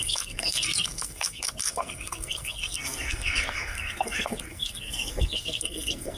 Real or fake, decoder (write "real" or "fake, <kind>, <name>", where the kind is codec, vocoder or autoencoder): fake, codec, SNAC